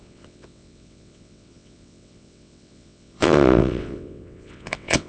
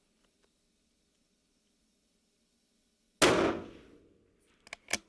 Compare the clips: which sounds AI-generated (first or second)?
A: first